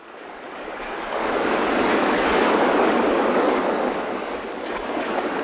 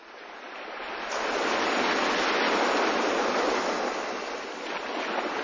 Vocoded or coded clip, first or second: first